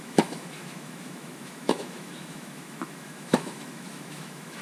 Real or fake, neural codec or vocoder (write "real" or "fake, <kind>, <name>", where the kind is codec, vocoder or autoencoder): fake, autoencoder, DAC-VAE